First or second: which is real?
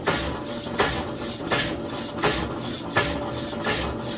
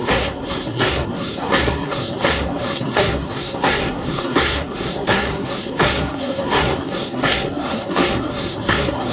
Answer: first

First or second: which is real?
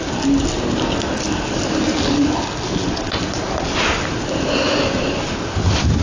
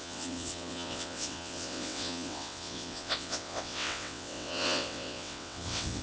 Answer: first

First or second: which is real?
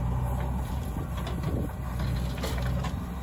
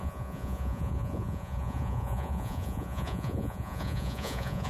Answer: first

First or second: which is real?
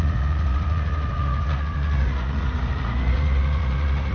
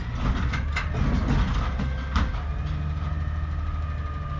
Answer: second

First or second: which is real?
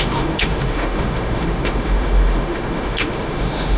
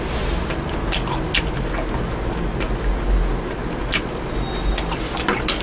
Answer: second